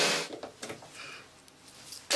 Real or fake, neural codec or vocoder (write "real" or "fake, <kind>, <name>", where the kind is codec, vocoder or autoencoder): real